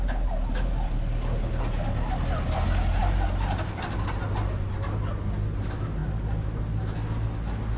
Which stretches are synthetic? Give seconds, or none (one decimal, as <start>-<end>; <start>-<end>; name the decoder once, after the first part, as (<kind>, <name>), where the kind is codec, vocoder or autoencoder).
none

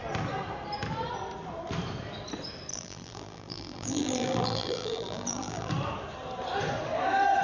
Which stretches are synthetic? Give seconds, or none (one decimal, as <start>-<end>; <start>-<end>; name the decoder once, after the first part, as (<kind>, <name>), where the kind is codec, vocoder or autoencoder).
2.7-5.7 (vocoder, BigVGAN v2)